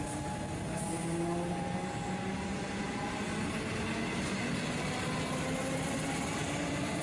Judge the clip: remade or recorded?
recorded